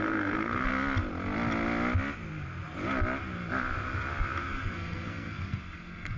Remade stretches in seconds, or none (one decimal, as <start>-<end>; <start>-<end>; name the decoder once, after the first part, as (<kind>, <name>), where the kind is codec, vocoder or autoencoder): 0.0-0.7 (codec, SNAC); 4.4-6.2